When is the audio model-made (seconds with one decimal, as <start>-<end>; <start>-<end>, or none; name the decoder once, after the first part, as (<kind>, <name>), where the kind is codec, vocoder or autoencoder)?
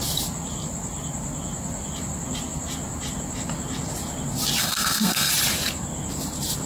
4.6-5.3 (codec, SNAC)